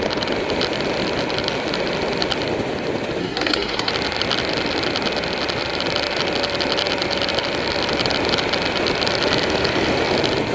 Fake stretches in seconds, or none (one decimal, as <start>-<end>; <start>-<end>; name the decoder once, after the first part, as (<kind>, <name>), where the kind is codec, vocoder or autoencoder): 3.2-3.9 (codec, SNAC)